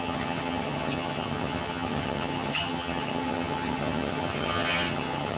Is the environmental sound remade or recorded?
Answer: remade